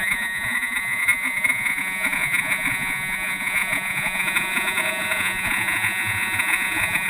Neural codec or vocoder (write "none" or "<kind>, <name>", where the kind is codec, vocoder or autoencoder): vocoder, Vocos